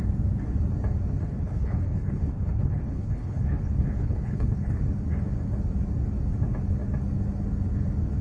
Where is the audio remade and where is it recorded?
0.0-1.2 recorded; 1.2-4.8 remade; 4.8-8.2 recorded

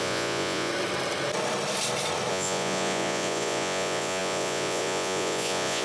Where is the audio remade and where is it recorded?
0.0-0.7 remade; 0.7-2.3 recorded; 2.3-5.8 remade

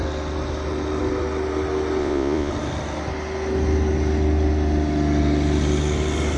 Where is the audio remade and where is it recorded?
0.0-2.0 recorded; 2.0-2.5 remade; 2.5-6.4 recorded

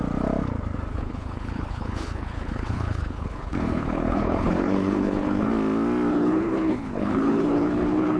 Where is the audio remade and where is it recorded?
0.0-0.9 recorded; 0.9-5.5 remade; 5.5-6.1 recorded; 6.1-8.2 remade